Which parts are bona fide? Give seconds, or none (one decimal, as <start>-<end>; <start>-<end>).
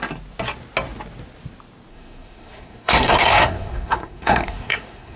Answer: 0.0-1.9